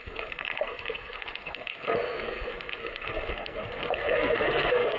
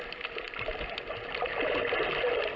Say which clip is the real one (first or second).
second